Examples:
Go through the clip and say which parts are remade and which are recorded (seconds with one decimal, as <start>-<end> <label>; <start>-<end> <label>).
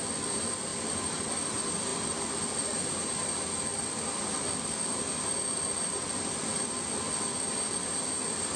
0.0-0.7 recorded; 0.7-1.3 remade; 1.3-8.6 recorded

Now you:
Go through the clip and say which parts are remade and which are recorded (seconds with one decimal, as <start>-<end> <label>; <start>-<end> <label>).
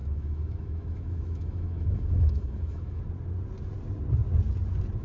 0.0-3.0 remade; 3.0-5.0 recorded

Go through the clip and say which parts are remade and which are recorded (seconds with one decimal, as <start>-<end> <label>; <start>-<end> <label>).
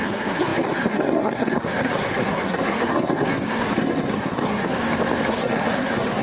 0.0-4.8 remade; 4.8-5.3 recorded; 5.3-6.2 remade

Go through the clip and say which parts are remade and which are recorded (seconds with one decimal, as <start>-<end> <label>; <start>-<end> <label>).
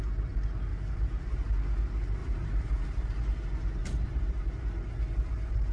0.0-0.7 recorded; 0.7-1.5 remade; 1.5-2.2 recorded; 2.2-3.3 remade; 3.3-3.8 recorded; 3.8-4.4 remade; 4.4-5.7 recorded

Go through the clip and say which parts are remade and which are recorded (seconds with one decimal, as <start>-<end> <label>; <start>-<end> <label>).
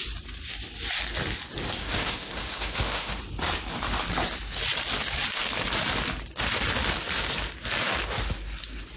0.0-1.8 recorded; 1.8-3.2 remade; 3.2-9.0 recorded